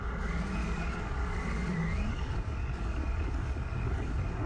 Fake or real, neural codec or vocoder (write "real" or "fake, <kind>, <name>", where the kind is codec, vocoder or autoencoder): fake, codec, DAC